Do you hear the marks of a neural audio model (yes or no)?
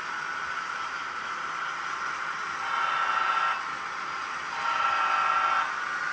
no